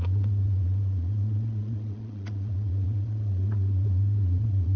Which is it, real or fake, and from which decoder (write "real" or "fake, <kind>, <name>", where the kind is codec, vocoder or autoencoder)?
fake, vocoder, Vocos